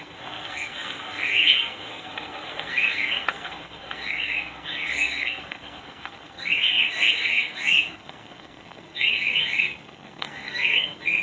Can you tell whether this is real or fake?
fake